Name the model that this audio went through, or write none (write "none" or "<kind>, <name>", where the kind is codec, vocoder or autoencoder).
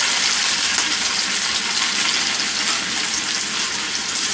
none